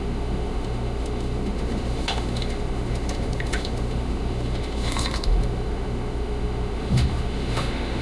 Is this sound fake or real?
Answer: fake